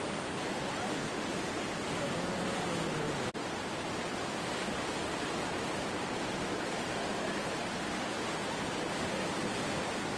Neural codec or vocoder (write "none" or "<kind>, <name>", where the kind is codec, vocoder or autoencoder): vocoder, BigVGAN v2